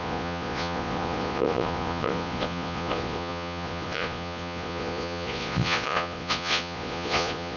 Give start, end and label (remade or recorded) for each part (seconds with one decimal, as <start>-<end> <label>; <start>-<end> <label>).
0.0-7.6 remade